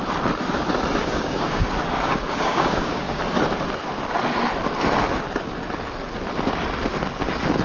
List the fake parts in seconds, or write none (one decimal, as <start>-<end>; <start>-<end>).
1.0-3.2